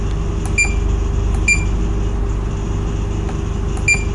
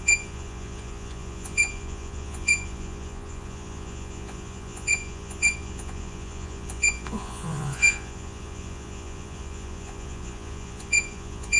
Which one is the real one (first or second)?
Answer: first